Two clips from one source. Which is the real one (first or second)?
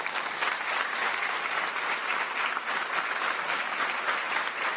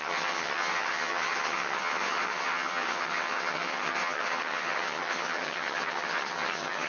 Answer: first